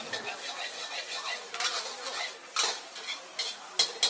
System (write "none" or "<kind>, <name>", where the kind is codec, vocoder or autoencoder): none